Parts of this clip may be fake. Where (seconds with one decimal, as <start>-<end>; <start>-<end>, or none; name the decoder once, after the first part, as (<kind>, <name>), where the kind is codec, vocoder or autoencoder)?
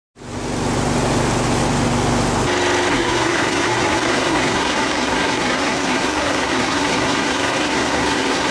2.9-8.5 (codec, SNAC)